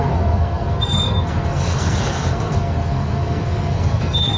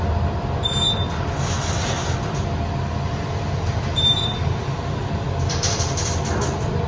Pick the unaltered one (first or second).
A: second